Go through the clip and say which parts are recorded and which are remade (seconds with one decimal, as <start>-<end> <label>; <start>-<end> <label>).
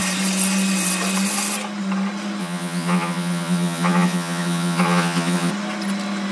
0.0-2.4 recorded; 2.4-5.5 remade; 5.5-6.3 recorded